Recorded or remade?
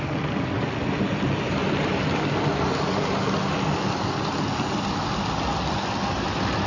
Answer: recorded